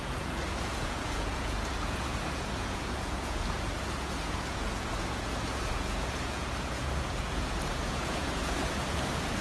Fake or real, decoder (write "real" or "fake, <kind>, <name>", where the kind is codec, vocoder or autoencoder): fake, vocoder, Vocos